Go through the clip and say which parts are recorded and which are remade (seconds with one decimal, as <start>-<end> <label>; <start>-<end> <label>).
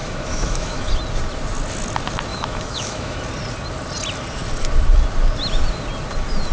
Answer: 0.0-0.9 remade; 0.9-2.3 recorded; 2.3-3.2 remade; 3.2-6.5 recorded